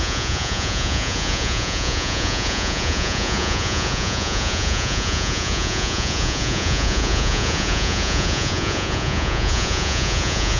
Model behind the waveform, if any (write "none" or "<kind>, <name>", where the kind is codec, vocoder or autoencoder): vocoder, Vocos